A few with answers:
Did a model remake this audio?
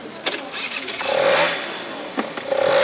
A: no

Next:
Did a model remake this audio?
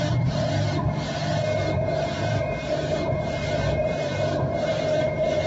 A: yes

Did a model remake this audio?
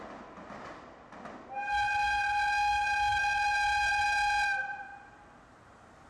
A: no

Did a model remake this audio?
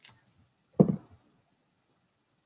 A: no